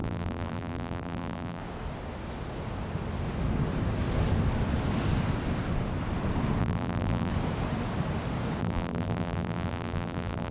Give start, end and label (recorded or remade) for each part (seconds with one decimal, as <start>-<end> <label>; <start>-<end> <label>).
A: 0.0-1.6 remade; 1.6-6.6 recorded; 6.6-7.3 remade; 7.3-8.6 recorded; 8.6-10.5 remade